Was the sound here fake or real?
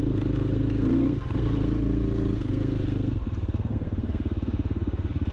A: fake